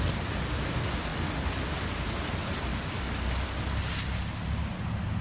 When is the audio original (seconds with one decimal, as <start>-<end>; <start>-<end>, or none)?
0.0-5.2